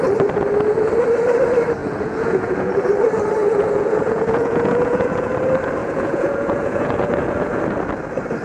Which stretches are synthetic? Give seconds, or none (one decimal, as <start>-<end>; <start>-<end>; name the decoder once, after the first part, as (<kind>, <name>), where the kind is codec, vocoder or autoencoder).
1.8-2.7 (vocoder, Vocos); 3.4-5.3; 5.8-7.6